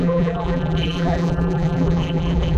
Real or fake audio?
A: fake